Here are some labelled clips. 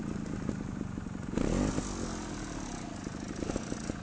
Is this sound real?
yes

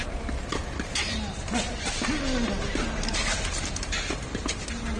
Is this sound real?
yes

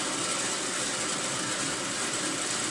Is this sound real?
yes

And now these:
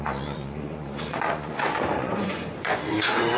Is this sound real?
no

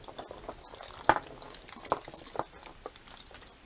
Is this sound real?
yes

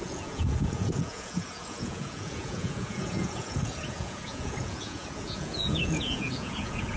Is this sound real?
no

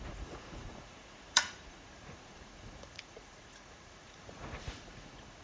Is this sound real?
no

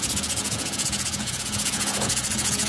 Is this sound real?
no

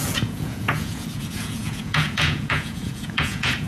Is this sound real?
no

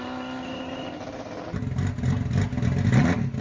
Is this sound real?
yes